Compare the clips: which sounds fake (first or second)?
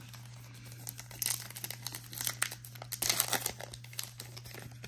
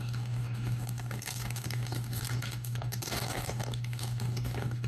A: second